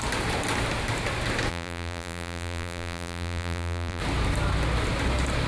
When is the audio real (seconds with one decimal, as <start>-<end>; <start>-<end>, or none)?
0.0-1.5; 4.0-5.5